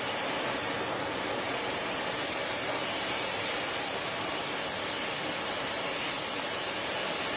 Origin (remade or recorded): recorded